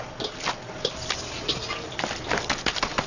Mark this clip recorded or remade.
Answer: recorded